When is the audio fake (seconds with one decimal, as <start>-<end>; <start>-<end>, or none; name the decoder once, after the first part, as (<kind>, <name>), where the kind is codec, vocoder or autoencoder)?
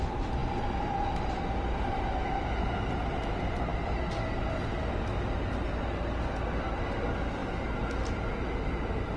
none